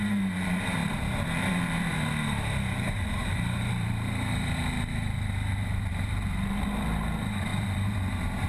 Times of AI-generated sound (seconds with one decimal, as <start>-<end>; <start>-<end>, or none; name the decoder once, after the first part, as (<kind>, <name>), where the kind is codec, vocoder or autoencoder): 0.0-8.5 (vocoder, BigVGAN v2)